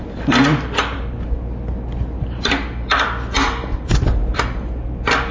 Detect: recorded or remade recorded